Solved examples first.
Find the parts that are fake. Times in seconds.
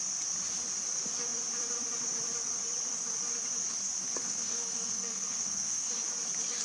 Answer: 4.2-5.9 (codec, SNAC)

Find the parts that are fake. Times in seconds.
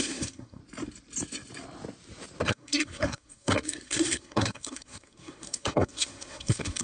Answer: 0.0-0.6 (codec, SNAC); 2.5-6.8